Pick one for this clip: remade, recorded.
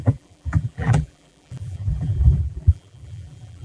remade